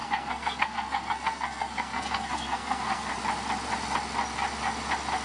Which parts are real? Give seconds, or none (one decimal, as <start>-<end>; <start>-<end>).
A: 3.1-5.2